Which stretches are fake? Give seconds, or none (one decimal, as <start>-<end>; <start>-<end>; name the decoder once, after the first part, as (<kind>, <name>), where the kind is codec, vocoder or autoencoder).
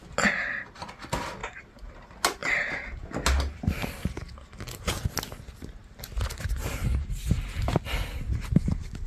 6.8-7.6 (vocoder, BigVGAN v2)